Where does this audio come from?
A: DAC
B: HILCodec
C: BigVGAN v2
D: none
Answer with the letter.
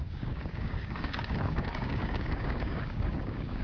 A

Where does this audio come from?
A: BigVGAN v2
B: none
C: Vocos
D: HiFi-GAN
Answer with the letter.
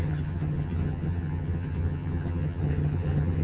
D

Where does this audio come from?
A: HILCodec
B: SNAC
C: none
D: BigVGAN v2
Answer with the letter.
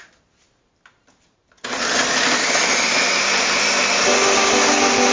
C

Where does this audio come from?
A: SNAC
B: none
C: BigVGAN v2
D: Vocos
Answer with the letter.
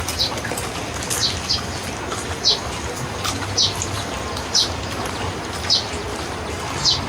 B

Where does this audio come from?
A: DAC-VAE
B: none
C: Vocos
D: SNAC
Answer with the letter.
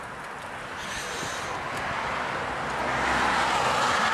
B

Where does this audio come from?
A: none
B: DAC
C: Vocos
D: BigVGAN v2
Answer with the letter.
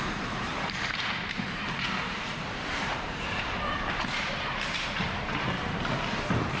D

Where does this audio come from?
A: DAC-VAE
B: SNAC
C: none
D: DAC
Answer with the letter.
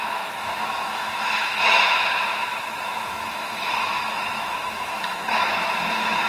A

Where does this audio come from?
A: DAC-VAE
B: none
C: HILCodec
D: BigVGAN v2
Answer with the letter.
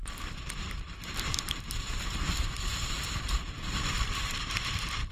D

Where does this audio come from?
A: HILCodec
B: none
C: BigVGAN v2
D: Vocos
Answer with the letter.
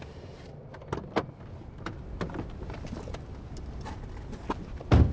B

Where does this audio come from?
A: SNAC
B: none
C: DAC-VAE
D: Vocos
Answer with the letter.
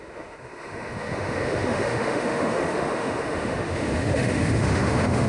C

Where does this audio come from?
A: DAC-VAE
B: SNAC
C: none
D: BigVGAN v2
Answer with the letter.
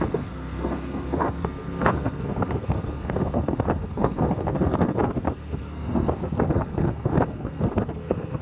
B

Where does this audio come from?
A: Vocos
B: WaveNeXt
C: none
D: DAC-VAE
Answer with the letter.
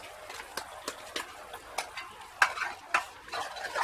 C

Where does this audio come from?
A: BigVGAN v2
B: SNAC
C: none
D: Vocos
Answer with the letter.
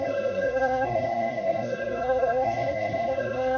B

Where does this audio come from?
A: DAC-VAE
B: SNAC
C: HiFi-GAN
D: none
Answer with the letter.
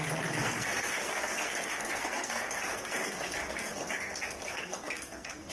B